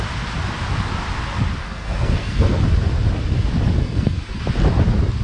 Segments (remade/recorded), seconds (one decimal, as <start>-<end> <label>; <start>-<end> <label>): 0.0-1.6 recorded; 1.6-2.6 remade; 2.6-3.8 recorded; 3.8-4.4 remade; 4.4-5.2 recorded